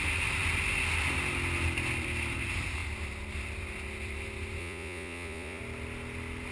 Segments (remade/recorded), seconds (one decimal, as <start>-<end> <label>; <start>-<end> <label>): 0.0-4.6 recorded; 4.6-5.6 remade; 5.6-6.5 recorded